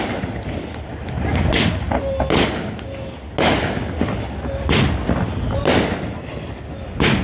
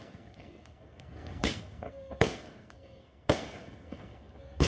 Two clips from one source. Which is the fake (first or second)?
second